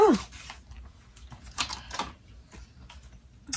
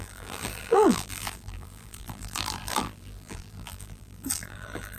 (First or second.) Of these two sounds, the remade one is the second